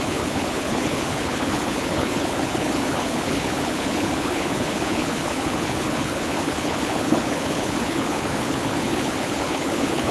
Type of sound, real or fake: fake